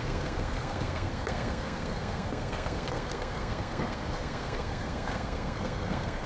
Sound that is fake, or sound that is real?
fake